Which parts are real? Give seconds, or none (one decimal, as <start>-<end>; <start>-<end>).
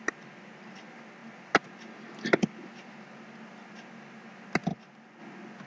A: 0.0-5.7